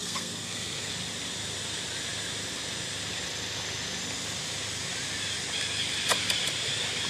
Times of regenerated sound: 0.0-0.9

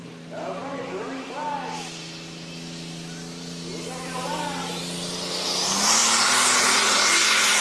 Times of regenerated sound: none

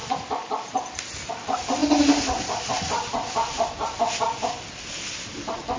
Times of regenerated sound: 0.0-1.3; 1.8-5.3

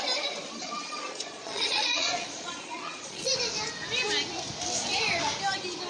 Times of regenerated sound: 0.6-3.3

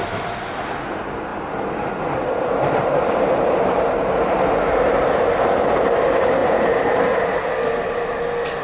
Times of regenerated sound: none